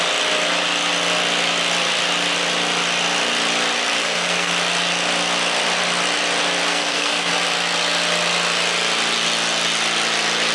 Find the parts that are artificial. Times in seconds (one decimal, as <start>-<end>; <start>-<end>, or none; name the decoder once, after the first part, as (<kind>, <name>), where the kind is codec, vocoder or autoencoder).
4.0-4.5 (codec, SNAC); 6.7-7.3